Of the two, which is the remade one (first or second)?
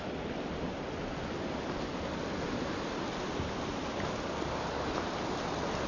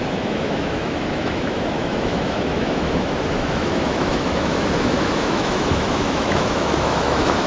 second